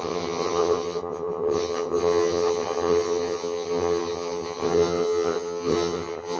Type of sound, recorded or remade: remade